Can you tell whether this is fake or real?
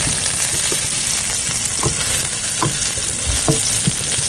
real